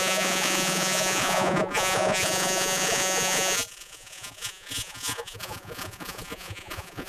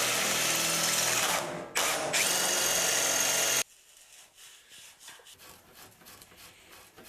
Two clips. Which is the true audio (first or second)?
second